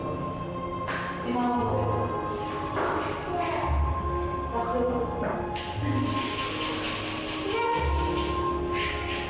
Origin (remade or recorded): recorded